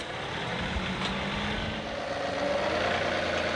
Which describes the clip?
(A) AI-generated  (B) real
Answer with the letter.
B